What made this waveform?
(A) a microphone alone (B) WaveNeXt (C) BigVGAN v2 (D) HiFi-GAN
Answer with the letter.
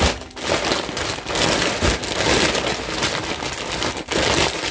A